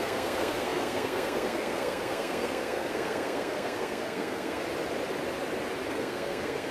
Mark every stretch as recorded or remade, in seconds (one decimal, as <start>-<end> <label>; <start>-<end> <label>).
0.0-4.6 remade; 4.6-5.9 recorded; 5.9-6.7 remade